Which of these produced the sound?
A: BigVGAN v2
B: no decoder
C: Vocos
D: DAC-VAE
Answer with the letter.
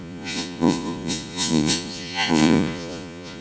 C